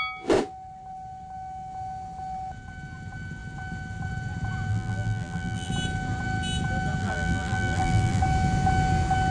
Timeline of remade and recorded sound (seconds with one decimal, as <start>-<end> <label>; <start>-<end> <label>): 0.0-4.7 recorded; 4.7-5.7 remade; 5.7-7.0 recorded; 7.0-8.2 remade; 8.2-9.3 recorded